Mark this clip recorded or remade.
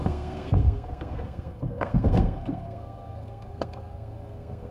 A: remade